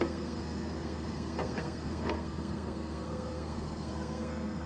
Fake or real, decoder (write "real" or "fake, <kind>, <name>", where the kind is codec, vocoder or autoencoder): fake, codec, SNAC